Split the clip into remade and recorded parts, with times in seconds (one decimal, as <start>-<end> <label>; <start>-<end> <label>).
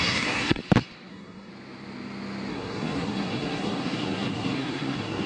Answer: 0.0-0.6 remade; 0.6-1.1 recorded; 1.1-1.5 remade; 1.5-2.5 recorded; 2.5-5.3 remade